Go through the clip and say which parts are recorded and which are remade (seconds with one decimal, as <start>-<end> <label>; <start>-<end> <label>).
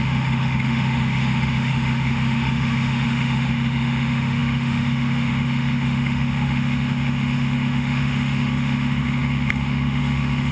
0.0-10.5 remade